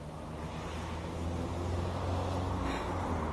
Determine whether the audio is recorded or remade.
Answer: recorded